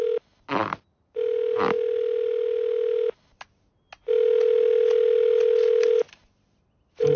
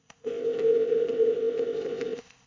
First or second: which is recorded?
first